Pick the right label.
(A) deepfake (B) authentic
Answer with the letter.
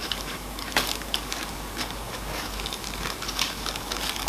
A